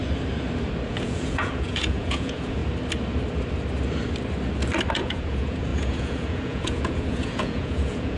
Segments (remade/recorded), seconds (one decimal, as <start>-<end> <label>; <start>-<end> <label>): 0.0-0.9 recorded; 0.9-2.6 remade; 2.6-4.9 recorded; 4.9-8.2 remade

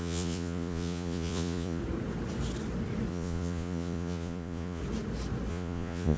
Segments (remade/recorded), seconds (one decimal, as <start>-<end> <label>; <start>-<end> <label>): 0.0-1.8 remade; 1.8-3.1 recorded; 3.1-4.8 remade; 4.8-5.5 recorded; 5.5-6.2 remade

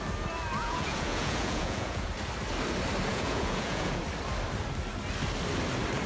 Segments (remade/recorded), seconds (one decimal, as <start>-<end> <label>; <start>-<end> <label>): 0.0-0.6 recorded; 0.6-2.1 remade; 2.1-3.1 recorded; 3.1-4.0 remade; 4.0-6.1 recorded

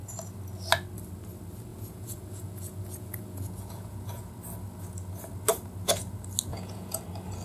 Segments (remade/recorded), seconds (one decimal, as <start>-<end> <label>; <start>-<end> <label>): 0.0-1.7 recorded; 1.7-4.3 remade; 4.3-6.5 recorded; 6.5-7.0 remade; 7.0-7.4 recorded